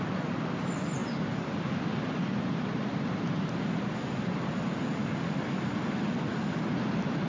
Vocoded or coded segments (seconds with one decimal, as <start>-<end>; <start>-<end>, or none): none